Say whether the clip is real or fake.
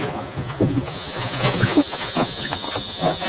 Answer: fake